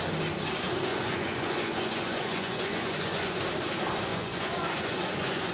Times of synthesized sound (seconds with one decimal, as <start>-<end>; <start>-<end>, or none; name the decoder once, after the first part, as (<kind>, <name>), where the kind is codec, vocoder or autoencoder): 0.9-3.4 (vocoder, Vocos); 4.1-5.5